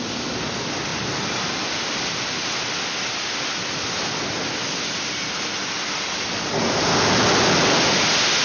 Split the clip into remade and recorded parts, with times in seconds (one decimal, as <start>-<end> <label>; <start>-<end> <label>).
0.0-8.4 recorded